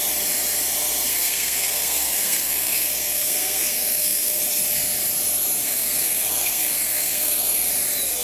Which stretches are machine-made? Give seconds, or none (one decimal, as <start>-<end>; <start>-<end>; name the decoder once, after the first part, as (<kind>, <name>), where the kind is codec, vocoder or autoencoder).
1.1-4.4 (codec, SNAC); 5.6-7.7